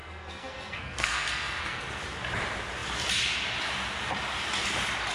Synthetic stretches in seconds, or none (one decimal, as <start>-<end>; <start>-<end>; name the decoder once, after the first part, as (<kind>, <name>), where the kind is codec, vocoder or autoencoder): 0.0-2.0 (codec, SNAC)